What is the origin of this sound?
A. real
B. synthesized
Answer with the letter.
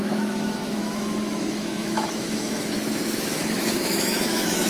B